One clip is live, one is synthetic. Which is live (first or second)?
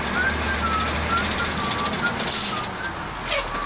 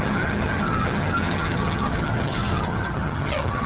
first